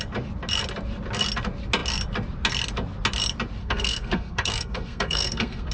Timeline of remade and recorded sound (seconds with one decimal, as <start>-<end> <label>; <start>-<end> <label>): 0.0-3.6 recorded; 3.6-5.7 remade